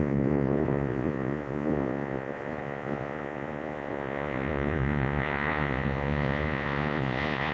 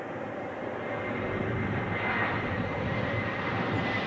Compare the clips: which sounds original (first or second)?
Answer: second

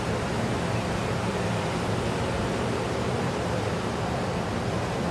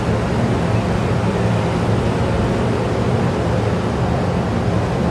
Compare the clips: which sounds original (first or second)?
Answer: second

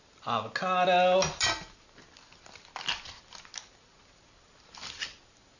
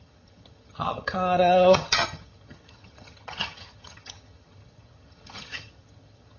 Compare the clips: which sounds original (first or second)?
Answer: first